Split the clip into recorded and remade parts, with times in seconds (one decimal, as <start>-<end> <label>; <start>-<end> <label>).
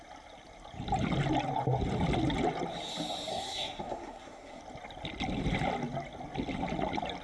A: 0.0-3.3 recorded; 3.3-4.6 remade; 4.6-7.2 recorded